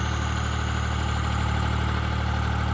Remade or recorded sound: recorded